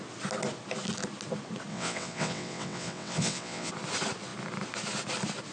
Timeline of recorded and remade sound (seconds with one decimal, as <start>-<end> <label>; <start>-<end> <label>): 0.0-1.7 recorded; 1.7-3.7 remade; 3.7-5.5 recorded